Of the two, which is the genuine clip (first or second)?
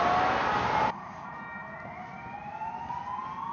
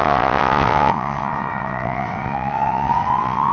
first